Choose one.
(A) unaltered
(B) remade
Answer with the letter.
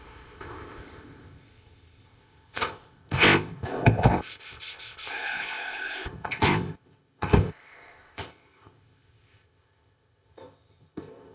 B